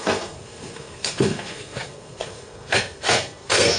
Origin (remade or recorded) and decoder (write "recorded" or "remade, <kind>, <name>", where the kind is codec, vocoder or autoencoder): remade, codec, SNAC